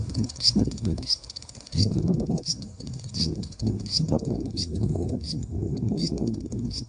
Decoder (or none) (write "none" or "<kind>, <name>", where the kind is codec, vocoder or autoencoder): codec, SNAC